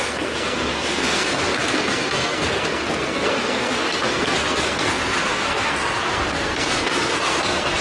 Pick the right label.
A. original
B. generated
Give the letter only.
B